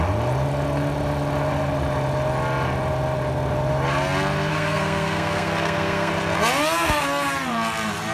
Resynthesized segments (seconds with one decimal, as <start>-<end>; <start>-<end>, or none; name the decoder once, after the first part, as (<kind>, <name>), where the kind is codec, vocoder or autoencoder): 4.5-6.1 (codec, SNAC)